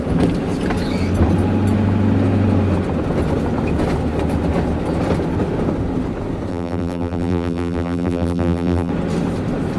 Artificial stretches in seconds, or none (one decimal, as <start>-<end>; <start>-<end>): 6.5-8.9